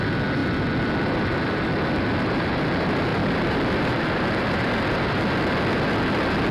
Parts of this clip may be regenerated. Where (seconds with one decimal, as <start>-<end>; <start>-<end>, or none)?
3.1-5.3